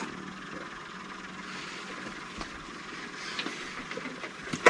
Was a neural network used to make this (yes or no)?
no